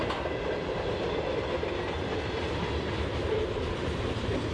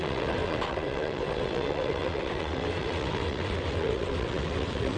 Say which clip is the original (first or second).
first